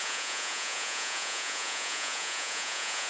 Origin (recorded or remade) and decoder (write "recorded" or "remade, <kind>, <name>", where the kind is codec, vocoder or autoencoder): remade, vocoder, Vocos